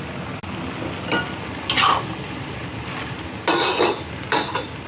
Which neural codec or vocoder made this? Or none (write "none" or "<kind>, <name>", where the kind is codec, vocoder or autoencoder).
none